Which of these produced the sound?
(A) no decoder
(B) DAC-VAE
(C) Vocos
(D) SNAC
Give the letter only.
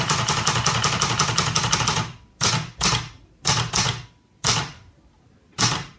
A